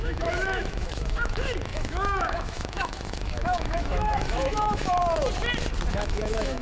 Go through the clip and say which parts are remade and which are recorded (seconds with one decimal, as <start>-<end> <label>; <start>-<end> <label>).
0.0-5.0 remade; 5.0-5.9 recorded; 5.9-6.6 remade